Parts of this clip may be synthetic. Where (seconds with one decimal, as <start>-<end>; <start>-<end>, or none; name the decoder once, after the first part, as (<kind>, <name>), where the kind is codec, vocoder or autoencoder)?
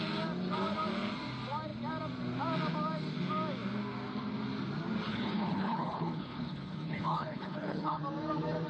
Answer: 5.1-8.0 (codec, HILCodec)